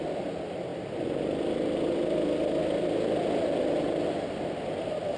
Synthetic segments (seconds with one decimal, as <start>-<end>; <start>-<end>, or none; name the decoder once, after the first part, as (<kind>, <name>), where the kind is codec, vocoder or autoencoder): 0.7-3.8 (vocoder, BigVGAN v2)